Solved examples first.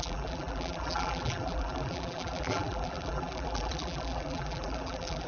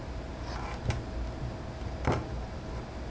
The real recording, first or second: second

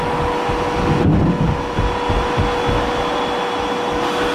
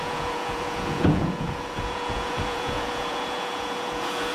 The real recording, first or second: first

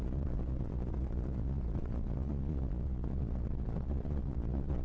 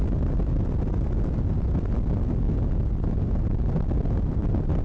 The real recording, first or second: second